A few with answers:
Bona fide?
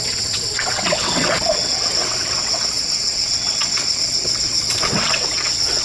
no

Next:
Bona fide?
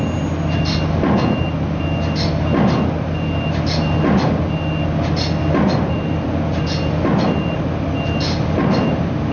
yes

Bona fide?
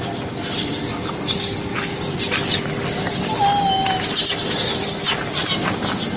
yes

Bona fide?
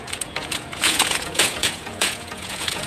no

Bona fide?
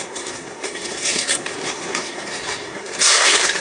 no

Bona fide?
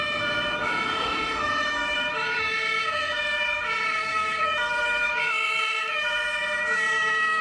no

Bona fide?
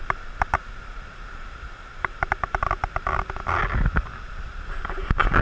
yes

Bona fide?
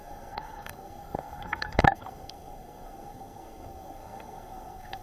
no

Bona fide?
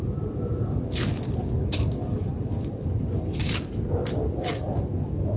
yes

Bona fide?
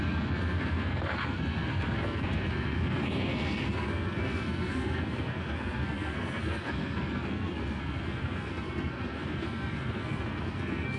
no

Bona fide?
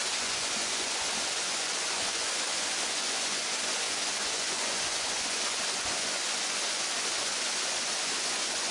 no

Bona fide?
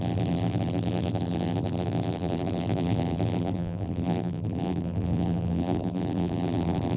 no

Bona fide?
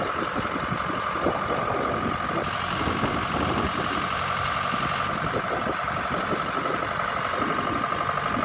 yes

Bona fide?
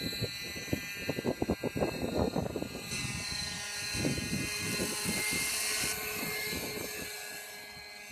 yes